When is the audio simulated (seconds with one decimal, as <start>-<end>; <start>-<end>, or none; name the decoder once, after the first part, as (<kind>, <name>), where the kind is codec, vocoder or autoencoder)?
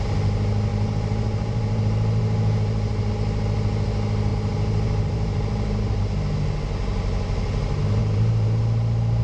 0.7-3.1 (vocoder, BigVGAN v2); 4.3-6.0; 8.0-8.6